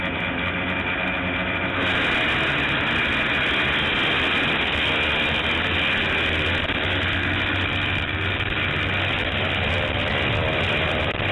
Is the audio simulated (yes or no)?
no